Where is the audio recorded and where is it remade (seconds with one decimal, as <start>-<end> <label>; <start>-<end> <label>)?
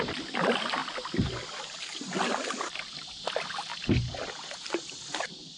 0.0-5.6 recorded